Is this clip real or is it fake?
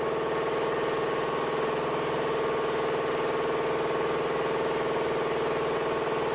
real